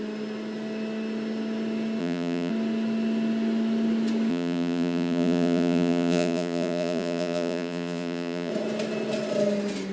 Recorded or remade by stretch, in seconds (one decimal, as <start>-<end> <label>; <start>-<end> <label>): 0.0-2.0 recorded; 2.0-2.5 remade; 2.5-4.3 recorded; 4.3-8.5 remade; 8.5-9.9 recorded